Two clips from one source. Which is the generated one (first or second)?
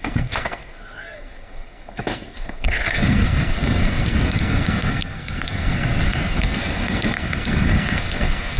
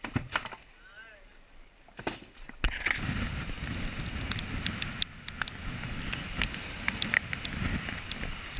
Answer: first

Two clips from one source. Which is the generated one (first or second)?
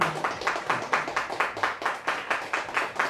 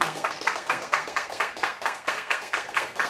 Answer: second